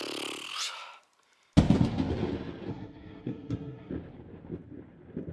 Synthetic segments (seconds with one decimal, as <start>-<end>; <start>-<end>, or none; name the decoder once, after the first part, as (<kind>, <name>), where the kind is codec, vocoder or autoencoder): 2.7-3.9 (codec, SNAC)